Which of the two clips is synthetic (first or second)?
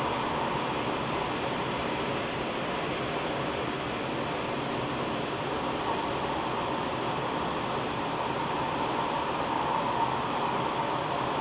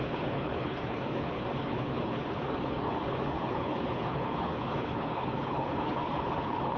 second